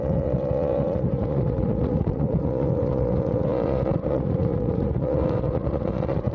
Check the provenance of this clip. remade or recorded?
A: remade